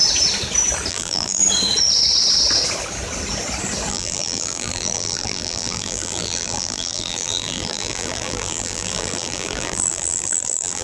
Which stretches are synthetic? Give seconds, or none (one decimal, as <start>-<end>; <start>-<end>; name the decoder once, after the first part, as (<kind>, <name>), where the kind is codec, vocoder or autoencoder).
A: 0.9-1.4 (vocoder, BigVGAN v2); 3.9-10.8